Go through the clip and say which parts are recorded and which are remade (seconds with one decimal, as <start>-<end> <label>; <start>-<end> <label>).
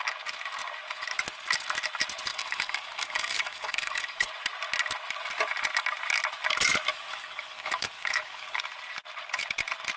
0.0-2.3 recorded; 2.3-4.3 remade; 4.3-6.9 recorded; 6.9-8.6 remade; 8.6-10.0 recorded